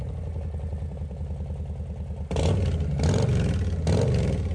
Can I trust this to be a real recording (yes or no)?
yes